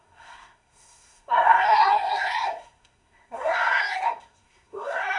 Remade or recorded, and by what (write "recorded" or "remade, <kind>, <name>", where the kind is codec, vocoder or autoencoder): remade, codec, SNAC